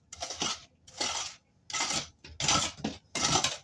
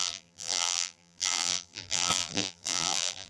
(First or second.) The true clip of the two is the first